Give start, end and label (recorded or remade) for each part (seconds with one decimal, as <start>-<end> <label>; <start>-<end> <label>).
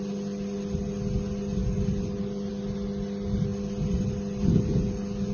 0.0-5.3 recorded